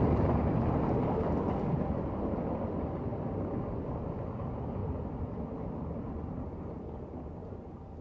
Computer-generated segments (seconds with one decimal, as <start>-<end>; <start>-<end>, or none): 3.1-3.9; 4.8-6.1